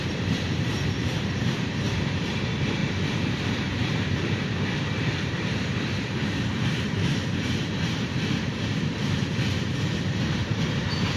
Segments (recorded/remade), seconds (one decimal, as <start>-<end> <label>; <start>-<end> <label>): 0.0-2.8 remade; 2.8-3.3 recorded; 3.3-11.2 remade